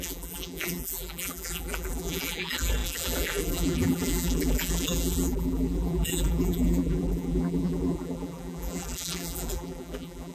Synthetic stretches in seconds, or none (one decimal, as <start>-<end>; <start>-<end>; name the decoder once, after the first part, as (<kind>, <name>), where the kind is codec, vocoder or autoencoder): 0.0-10.3 (vocoder, BigVGAN v2)

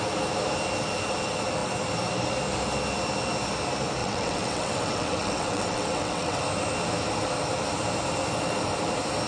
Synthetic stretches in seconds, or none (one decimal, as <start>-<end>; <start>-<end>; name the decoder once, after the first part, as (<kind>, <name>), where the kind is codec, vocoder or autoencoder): 4.0-6.4 (vocoder, WaveNeXt)

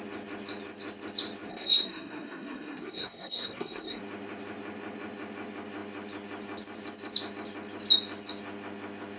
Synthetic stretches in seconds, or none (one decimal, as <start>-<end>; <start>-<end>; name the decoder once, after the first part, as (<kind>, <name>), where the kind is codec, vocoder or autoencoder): 1.5-4.0 (codec, SNAC)

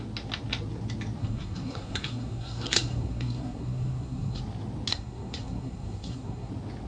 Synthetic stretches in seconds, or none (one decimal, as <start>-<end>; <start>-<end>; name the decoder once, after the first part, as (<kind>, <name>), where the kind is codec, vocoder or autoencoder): 1.2-4.4 (codec, SNAC); 4.9-6.5

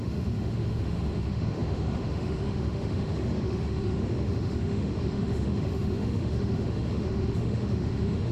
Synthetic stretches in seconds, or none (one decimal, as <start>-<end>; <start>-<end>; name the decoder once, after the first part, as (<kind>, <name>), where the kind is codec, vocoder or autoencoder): 0.0-8.3 (autoencoder, DAC-VAE)

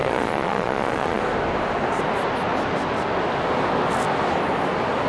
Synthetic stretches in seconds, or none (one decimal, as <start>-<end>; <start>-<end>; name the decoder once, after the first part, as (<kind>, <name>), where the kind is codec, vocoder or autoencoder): 0.0-1.2 (vocoder, Vocos)